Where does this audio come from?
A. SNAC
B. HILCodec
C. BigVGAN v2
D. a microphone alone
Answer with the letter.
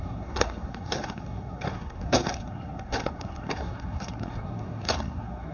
A